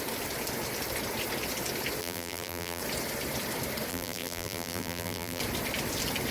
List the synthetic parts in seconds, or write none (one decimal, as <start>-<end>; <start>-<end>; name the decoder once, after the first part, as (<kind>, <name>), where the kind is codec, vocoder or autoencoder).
2.0-2.8 (vocoder, BigVGAN v2); 3.9-5.4